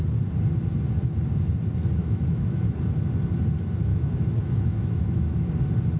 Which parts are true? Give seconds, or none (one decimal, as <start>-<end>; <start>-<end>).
0.0-2.0; 2.8-3.9; 5.5-6.0